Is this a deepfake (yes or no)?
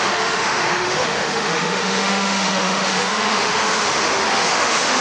yes